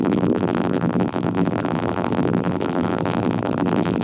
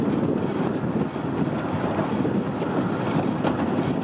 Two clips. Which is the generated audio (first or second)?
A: first